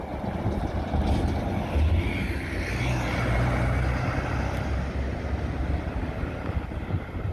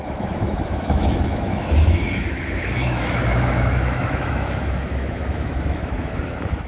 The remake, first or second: second